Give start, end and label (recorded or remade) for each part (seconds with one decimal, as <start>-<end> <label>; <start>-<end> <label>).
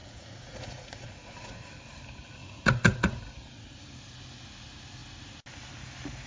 0.0-1.7 remade; 1.7-2.4 recorded; 2.4-3.2 remade; 3.2-6.3 recorded